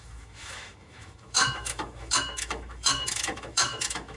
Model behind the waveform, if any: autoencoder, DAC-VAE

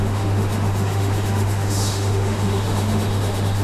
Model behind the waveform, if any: autoencoder, DAC-VAE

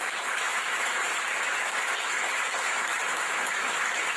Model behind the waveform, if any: autoencoder, DAC-VAE